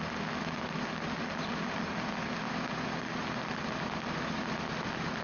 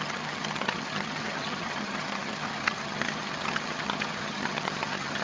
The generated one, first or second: second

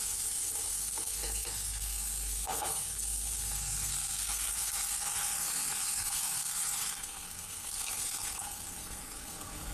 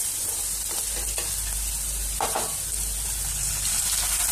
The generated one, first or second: first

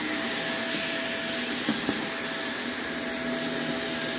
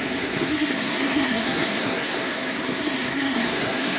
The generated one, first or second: second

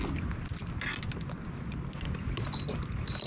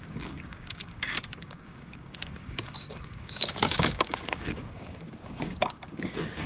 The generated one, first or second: second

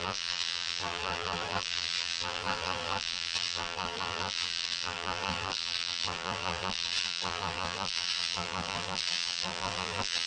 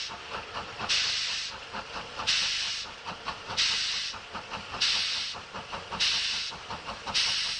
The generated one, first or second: first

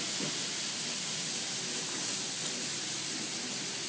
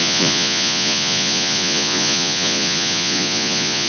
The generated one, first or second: second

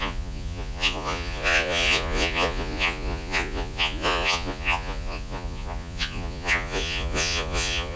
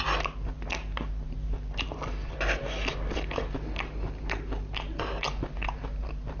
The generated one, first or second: first